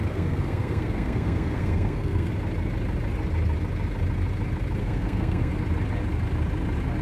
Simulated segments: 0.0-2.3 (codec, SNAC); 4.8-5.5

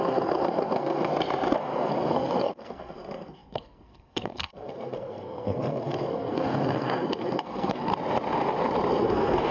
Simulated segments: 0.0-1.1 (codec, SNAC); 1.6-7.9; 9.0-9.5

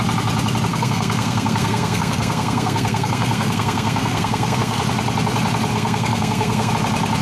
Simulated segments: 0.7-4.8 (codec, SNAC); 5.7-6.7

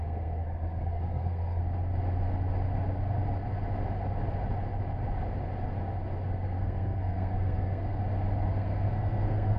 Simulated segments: 0.0-1.6 (codec, SNAC); 6.3-8.0; 8.5-9.6

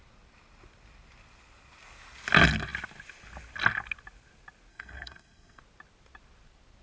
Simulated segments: 4.7-5.6 (codec, SNAC)

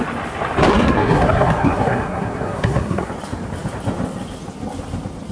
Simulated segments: 0.7-3.1 (codec, SNAC)